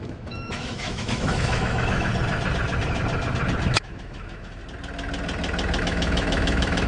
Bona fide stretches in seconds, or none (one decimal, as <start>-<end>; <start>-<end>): 2.1-3.7; 4.6-5.8